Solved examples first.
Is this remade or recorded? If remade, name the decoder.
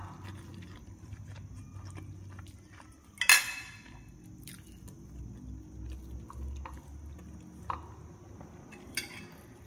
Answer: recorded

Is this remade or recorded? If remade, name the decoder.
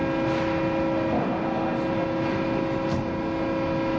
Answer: recorded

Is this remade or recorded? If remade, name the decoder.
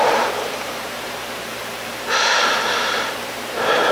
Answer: remade, vocoder, BigVGAN v2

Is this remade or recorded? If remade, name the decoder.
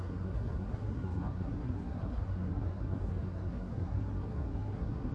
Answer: remade, codec, SNAC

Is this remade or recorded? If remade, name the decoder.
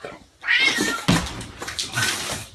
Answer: recorded